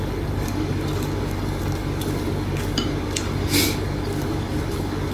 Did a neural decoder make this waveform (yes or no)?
yes